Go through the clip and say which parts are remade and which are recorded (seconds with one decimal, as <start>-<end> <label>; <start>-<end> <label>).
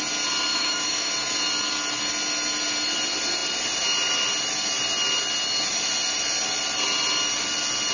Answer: 0.0-0.5 recorded; 0.5-1.1 remade; 1.1-7.9 recorded